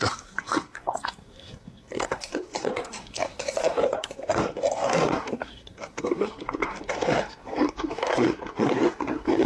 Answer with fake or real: fake